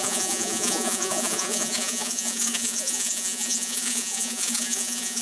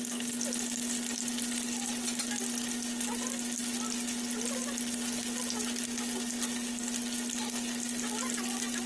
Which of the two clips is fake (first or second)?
first